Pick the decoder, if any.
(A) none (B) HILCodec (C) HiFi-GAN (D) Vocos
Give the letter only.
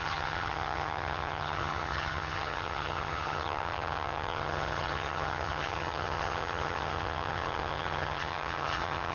C